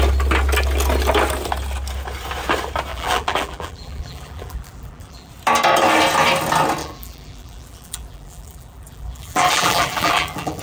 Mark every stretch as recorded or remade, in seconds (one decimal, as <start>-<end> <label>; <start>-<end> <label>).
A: 0.0-2.9 recorded; 2.9-5.3 remade; 5.3-6.8 recorded; 6.8-10.6 remade